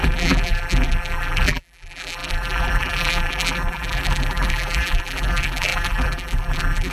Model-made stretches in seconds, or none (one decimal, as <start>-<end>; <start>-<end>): 0.0-6.9